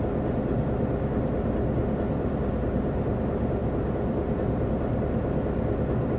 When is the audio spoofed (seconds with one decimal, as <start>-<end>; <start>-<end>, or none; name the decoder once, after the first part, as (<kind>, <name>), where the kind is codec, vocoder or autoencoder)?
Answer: none